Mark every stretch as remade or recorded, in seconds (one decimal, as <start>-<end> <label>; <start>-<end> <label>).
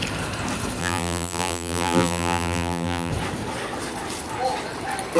0.0-0.8 recorded; 0.8-3.1 remade; 3.1-5.2 recorded